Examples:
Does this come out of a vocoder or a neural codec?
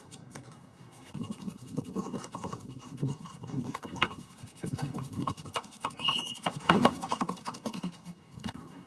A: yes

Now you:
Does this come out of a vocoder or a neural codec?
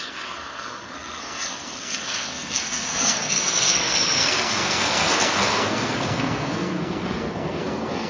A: yes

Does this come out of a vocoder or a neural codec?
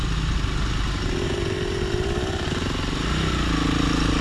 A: no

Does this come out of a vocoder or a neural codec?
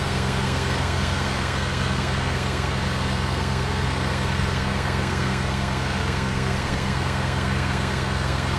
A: yes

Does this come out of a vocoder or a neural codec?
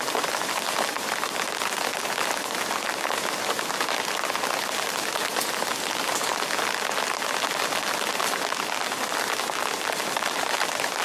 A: no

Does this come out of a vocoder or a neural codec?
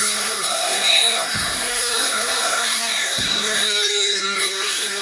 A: yes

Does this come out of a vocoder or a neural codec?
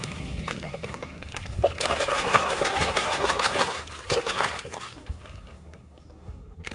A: yes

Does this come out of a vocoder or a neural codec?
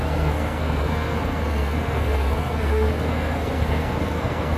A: yes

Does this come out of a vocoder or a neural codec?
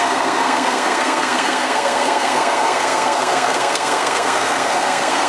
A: yes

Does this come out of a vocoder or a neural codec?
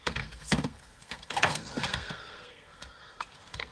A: yes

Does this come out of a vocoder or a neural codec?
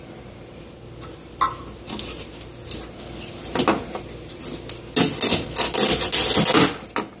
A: no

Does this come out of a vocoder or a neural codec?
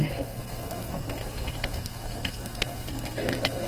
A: yes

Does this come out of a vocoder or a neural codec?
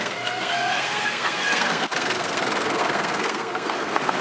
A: yes